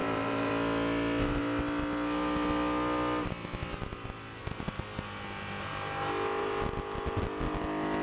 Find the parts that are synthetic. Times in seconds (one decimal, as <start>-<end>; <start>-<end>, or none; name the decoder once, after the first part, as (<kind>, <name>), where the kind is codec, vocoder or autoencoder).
0.0-0.5 (vocoder, BigVGAN v2)